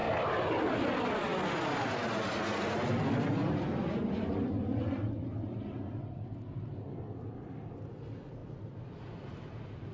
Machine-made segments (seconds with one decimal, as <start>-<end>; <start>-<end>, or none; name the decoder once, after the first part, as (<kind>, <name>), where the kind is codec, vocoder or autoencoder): none